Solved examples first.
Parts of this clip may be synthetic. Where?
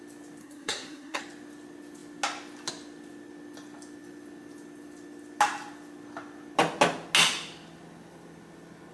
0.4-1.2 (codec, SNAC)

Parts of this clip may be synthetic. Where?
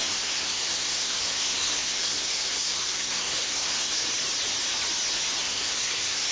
0.0-4.0 (codec, SNAC); 5.4-6.3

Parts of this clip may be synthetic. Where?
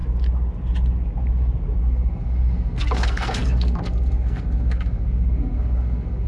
1.8-6.3 (codec, SNAC)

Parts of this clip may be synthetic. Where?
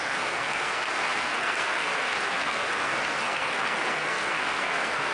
0.0-5.1 (codec, SNAC)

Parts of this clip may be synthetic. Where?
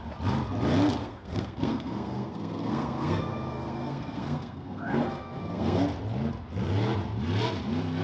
1.0-5.8 (codec, SNAC)